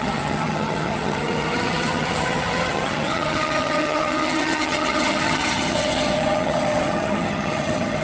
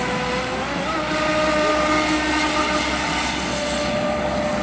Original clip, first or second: second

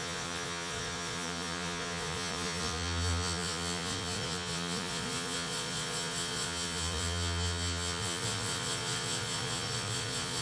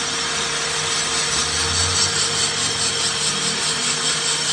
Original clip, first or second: second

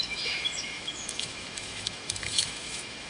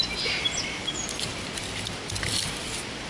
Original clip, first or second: second